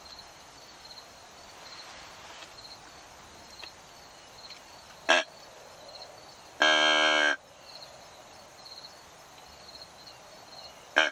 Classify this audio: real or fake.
real